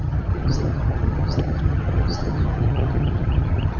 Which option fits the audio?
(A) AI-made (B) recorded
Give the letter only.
A